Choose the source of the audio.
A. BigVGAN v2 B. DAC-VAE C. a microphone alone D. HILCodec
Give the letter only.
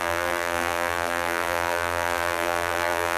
A